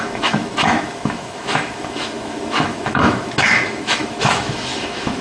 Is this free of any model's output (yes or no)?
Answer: no